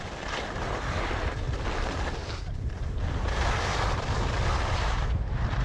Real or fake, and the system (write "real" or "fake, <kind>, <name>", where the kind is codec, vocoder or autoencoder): real